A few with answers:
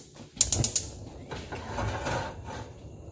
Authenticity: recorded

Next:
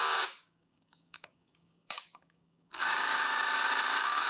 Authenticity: remade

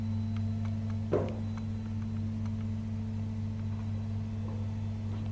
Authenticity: recorded